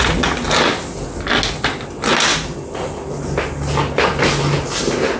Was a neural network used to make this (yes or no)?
no